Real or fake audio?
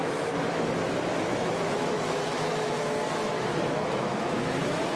fake